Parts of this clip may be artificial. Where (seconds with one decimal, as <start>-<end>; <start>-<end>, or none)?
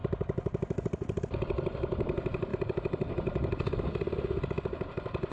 none